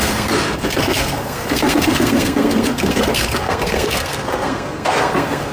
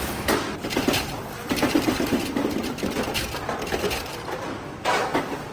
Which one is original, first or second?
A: second